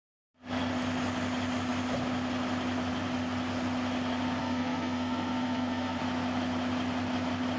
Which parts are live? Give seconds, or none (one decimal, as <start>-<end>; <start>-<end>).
0.0-4.4; 6.0-7.6